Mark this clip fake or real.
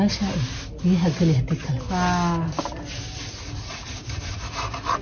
real